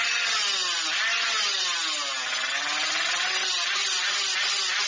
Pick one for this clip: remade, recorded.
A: recorded